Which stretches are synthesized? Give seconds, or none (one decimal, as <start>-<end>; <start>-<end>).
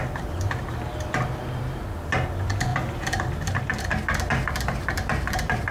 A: 0.0-5.7